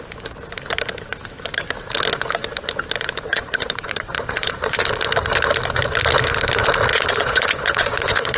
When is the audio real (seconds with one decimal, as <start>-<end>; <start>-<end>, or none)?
0.0-3.3; 4.8-6.9